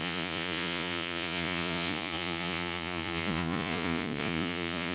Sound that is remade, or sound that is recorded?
remade